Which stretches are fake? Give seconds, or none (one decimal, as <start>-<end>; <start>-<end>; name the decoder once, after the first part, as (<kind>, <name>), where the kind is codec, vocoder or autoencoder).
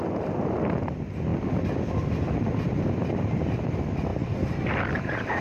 1.3-3.5 (vocoder, BigVGAN v2)